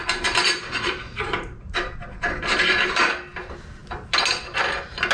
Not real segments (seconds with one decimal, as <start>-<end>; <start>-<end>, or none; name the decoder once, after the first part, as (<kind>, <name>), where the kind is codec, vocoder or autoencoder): 0.0-3.1 (vocoder, BigVGAN v2)